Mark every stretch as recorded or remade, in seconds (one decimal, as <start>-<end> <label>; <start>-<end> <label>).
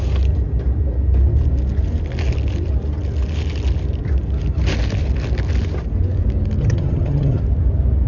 0.0-6.6 recorded; 6.6-7.4 remade; 7.4-8.1 recorded